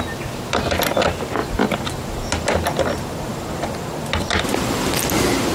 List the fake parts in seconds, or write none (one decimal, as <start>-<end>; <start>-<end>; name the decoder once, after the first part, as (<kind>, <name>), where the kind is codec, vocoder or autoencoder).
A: none